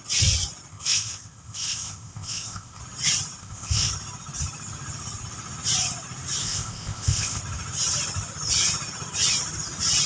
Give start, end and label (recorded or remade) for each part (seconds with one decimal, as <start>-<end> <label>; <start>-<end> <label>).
0.0-0.7 recorded; 0.7-2.8 remade; 2.8-3.4 recorded; 3.4-3.9 remade; 3.9-6.4 recorded; 6.4-7.4 remade; 7.4-10.1 recorded

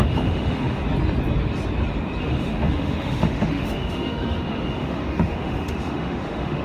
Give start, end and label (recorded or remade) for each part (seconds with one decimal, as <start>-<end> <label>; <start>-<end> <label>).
0.0-0.8 remade; 0.8-2.2 recorded; 2.2-6.6 remade

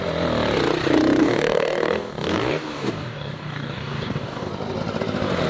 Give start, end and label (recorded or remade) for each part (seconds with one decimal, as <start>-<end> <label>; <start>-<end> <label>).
0.0-1.2 recorded; 1.2-4.5 remade; 4.5-5.5 recorded

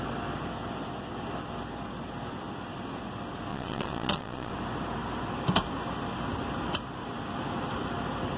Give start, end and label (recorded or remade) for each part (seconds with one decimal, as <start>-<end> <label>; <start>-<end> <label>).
0.0-3.5 recorded; 3.5-4.5 remade; 4.5-8.4 recorded

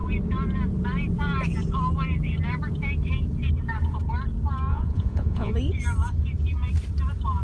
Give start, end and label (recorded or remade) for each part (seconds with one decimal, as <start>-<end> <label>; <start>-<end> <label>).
0.0-4.7 recorded; 4.7-5.5 remade; 5.5-7.4 recorded

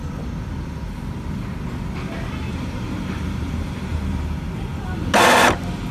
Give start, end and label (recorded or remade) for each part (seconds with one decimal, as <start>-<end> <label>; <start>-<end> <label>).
0.0-2.5 recorded; 2.5-4.1 remade; 4.1-5.9 recorded

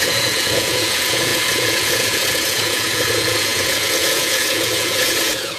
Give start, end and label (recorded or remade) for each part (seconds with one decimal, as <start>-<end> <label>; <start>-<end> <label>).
0.0-5.6 remade